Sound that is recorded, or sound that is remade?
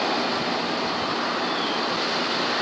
recorded